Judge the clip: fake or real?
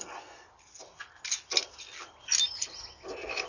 real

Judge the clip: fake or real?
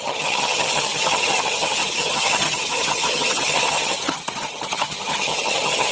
fake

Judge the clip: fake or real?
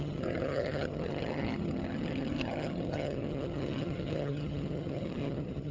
fake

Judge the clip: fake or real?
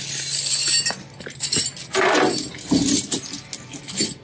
real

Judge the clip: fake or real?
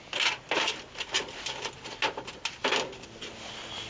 real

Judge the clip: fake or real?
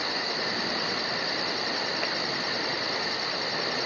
real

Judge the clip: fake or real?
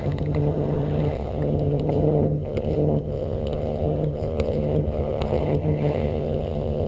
fake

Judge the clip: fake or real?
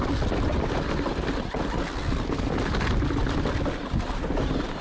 real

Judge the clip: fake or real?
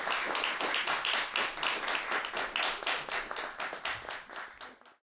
real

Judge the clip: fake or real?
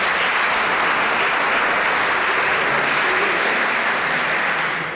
real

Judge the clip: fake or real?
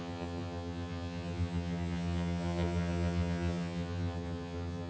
fake